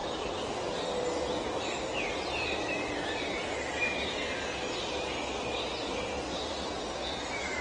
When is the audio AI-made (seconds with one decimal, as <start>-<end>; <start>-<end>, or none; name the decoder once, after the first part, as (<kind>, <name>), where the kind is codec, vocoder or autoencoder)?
none